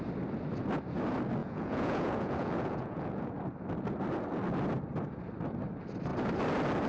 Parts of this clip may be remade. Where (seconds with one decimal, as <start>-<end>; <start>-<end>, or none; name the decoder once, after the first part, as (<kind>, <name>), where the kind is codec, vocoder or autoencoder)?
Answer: 1.4-3.3 (vocoder, Vocos)